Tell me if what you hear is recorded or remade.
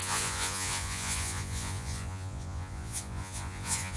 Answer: remade